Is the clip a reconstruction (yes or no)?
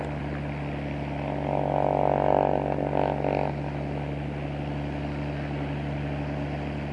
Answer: no